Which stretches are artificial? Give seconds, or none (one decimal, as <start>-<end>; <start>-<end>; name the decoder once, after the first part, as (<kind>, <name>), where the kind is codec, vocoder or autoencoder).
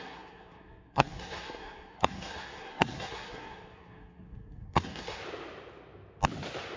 0.0-5.2 (codec, SNAC)